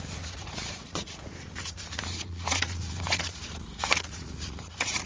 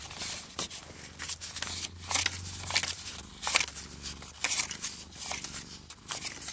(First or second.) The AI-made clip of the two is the first